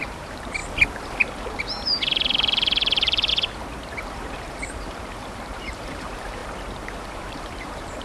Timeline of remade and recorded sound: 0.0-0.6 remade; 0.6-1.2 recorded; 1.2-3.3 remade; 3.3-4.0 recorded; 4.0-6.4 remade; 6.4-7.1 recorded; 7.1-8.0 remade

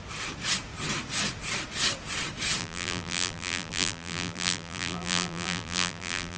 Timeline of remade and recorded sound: 0.0-2.6 recorded; 2.6-6.4 remade